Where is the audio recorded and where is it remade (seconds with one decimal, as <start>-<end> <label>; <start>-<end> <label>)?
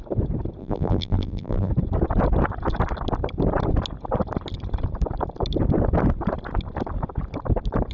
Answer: 0.0-0.6 recorded; 0.6-1.7 remade; 1.7-7.9 recorded